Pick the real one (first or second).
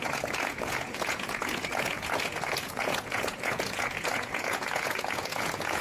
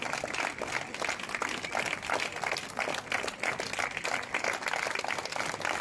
second